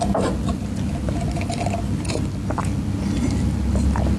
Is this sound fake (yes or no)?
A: no